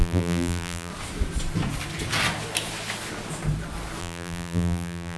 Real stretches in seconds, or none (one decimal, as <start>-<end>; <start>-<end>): 0.9-4.0